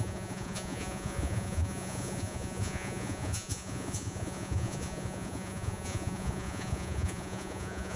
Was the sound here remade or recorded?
remade